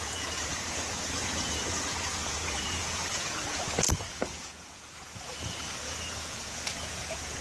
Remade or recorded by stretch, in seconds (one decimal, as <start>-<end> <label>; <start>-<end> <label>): 0.0-7.4 remade